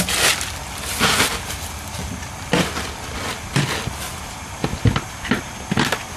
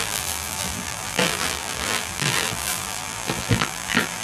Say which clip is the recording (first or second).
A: first